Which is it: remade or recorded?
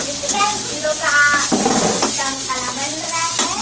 recorded